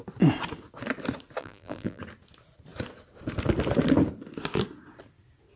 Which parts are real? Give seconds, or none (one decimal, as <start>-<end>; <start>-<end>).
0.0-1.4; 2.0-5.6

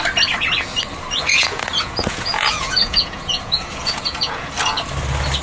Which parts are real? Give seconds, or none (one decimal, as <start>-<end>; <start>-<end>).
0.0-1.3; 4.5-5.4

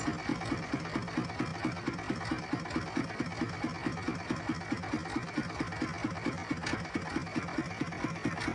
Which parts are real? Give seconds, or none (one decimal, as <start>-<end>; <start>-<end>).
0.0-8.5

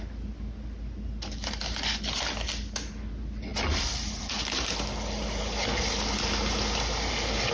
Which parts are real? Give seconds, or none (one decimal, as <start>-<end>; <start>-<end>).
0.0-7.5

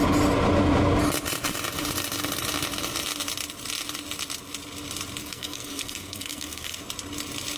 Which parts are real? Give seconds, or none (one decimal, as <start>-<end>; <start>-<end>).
0.0-5.2; 6.8-7.6

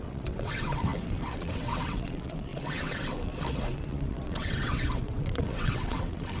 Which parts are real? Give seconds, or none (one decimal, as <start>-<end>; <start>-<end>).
none

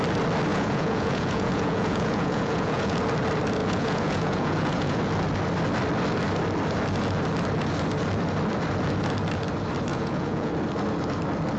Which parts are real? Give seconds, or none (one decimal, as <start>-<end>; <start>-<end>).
0.0-0.5; 3.0-3.6; 5.0-9.9; 10.5-11.6